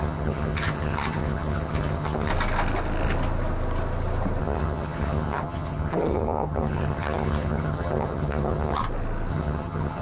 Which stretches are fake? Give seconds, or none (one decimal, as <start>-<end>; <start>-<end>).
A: 0.0-2.3; 4.4-8.8; 9.3-10.0